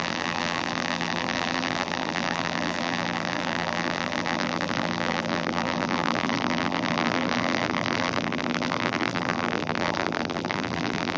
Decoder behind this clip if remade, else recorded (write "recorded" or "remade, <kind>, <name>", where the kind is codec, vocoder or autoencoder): remade, vocoder, BigVGAN v2